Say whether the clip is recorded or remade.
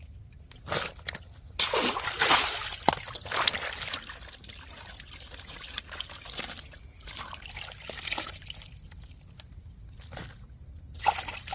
recorded